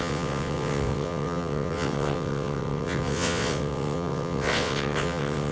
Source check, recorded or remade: remade